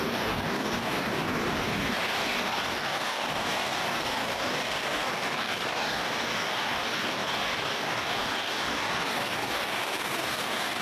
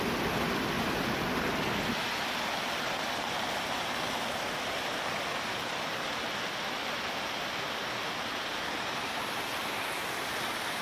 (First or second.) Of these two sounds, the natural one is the second